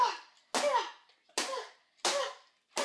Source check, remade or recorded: recorded